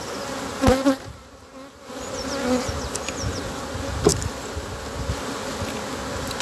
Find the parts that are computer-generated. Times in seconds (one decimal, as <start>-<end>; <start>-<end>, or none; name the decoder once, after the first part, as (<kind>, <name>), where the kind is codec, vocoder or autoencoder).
none